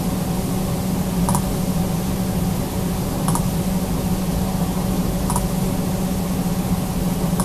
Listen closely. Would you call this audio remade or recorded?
recorded